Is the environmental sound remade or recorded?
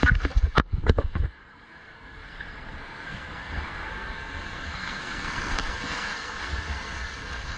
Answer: remade